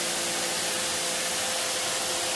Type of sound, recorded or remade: recorded